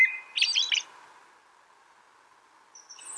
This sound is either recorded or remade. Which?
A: recorded